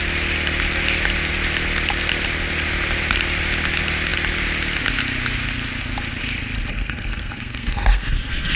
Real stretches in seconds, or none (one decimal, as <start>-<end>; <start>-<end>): 0.0-6.7